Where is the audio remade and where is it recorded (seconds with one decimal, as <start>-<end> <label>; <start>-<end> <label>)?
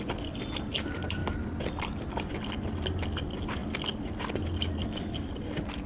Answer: 0.0-5.9 recorded